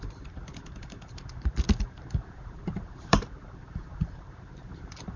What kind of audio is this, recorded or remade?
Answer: remade